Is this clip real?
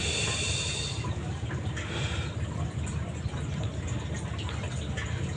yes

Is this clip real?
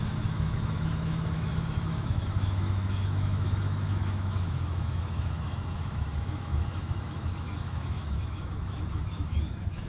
no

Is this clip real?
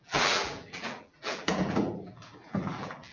no